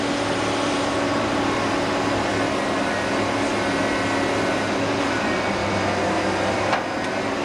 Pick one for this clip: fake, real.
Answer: real